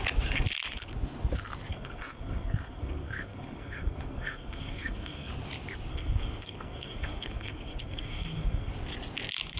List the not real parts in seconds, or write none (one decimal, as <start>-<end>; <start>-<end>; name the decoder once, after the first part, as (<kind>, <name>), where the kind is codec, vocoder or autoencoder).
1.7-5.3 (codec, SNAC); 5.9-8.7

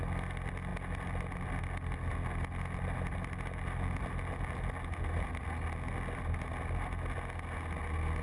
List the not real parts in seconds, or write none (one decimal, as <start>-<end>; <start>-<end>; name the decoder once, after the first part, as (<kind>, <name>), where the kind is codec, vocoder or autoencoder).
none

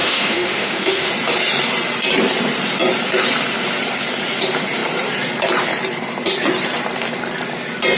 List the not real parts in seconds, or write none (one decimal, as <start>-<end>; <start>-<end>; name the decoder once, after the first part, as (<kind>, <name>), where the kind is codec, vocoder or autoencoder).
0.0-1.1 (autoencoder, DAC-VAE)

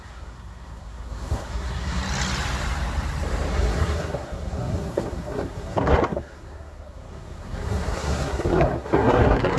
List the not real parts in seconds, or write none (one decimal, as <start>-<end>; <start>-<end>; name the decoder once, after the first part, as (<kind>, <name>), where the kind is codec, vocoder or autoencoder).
0.0-2.0 (codec, SNAC); 3.5-9.6

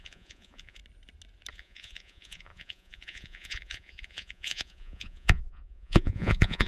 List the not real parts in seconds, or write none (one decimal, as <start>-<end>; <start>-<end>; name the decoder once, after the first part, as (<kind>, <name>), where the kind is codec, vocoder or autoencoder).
0.0-0.8 (vocoder, Vocos); 1.5-6.7

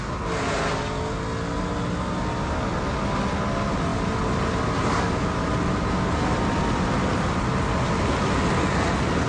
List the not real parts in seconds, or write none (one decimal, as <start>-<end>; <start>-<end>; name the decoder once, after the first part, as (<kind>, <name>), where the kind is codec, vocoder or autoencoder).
none

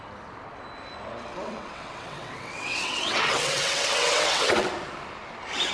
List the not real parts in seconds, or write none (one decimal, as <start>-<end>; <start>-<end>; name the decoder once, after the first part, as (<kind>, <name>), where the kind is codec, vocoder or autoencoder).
1.3-4.7 (vocoder, WaveNeXt)